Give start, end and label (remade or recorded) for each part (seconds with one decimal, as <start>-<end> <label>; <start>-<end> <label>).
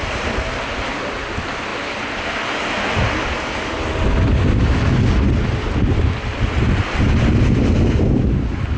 0.0-8.8 recorded